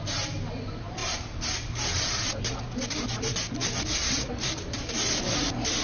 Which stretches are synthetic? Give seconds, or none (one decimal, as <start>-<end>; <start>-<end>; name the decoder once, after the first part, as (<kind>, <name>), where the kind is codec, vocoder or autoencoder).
none